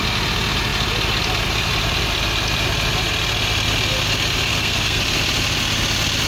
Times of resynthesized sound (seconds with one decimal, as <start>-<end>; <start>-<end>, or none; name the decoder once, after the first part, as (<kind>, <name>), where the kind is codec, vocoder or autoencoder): 4.5-5.0 (codec, SNAC)